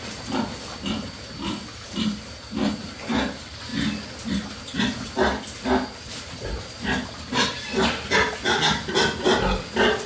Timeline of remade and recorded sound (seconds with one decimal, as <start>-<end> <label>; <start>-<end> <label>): 0.0-10.1 recorded